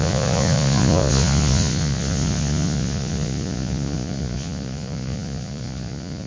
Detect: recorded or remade remade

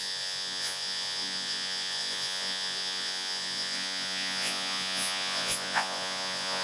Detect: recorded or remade remade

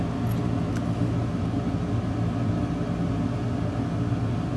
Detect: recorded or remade recorded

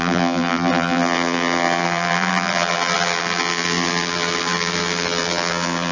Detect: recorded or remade remade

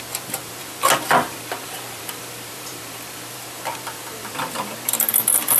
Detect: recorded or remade remade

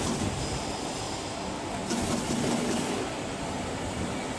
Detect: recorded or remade recorded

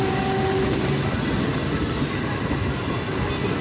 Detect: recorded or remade recorded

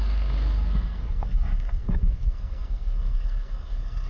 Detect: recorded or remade remade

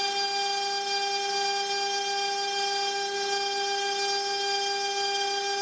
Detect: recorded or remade recorded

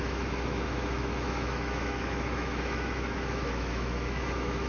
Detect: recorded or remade remade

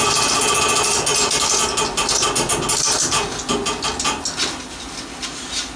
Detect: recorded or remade recorded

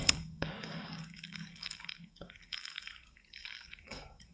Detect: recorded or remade remade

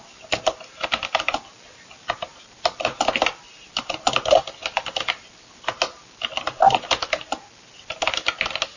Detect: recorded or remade recorded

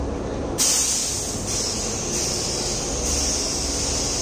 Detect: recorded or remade recorded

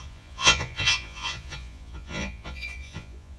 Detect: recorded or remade remade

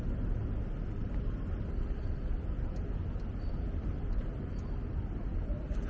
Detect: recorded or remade recorded